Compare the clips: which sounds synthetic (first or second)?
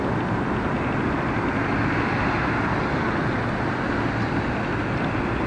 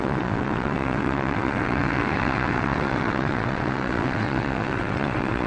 second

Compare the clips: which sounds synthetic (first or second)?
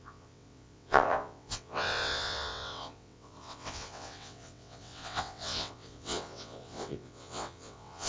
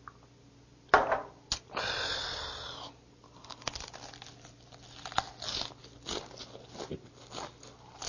first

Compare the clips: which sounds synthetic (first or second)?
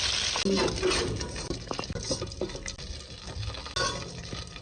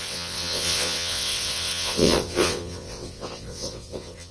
second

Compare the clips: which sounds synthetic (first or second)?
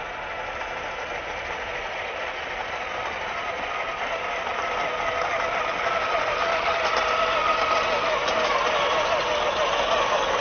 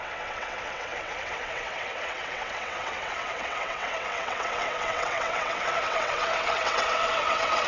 second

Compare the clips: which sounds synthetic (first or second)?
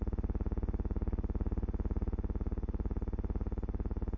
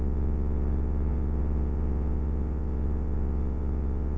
second